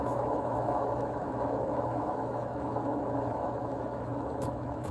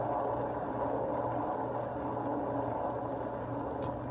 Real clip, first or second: second